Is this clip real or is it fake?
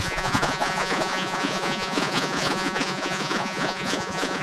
fake